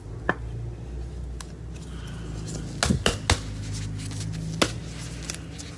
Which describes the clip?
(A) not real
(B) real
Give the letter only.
B